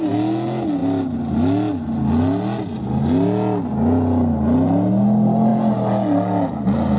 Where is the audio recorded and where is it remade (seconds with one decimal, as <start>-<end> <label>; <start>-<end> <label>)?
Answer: 0.0-7.0 recorded